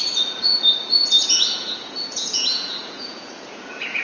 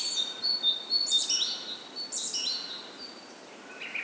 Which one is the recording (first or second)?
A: second